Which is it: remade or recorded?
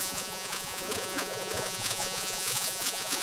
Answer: remade